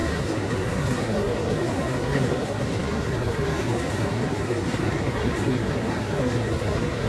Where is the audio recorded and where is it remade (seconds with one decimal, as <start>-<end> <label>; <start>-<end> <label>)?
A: 0.0-7.1 remade